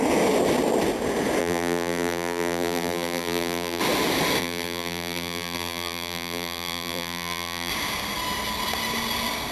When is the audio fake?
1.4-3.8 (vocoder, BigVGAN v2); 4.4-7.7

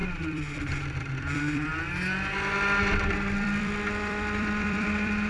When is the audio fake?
0.0-1.7 (vocoder, BigVGAN v2); 3.1-5.3

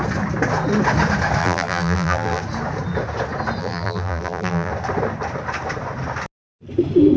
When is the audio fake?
1.4-2.4 (vocoder, BigVGAN v2); 3.6-4.7

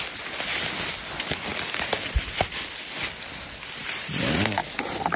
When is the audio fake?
1.5-2.7 (vocoder, BigVGAN v2); 3.8-4.8

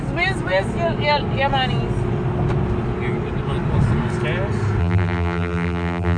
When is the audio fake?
4.8-6.2 (vocoder, BigVGAN v2)

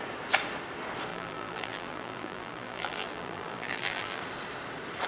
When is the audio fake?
1.1-4.2 (vocoder, BigVGAN v2)

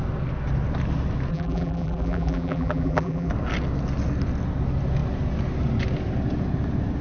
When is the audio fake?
1.3-3.3 (vocoder, BigVGAN v2)

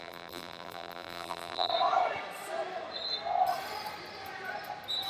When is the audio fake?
0.0-1.7 (vocoder, BigVGAN v2)